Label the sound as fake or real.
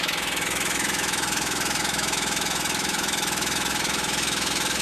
fake